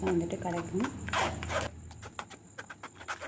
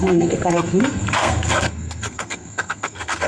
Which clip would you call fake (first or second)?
second